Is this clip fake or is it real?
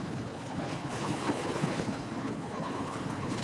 fake